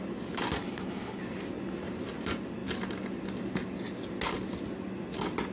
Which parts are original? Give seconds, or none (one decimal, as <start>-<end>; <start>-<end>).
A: 0.0-0.6; 1.2-5.5

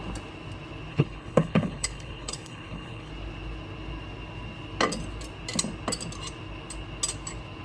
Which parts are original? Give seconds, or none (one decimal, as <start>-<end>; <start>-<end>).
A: 0.0-0.9; 3.1-7.6